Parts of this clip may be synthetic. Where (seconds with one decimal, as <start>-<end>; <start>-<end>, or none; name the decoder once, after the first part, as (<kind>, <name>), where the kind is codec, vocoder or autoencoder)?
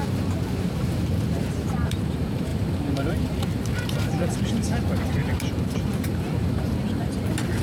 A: 0.0-7.6 (vocoder, BigVGAN v2)